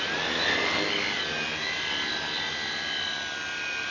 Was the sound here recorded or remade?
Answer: recorded